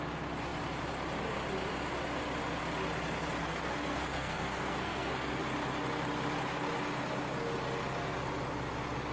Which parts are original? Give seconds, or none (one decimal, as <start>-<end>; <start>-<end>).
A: 0.0-3.4; 5.4-9.1